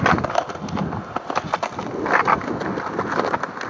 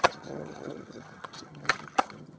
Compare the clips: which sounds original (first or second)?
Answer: first